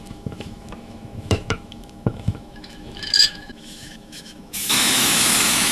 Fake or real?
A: fake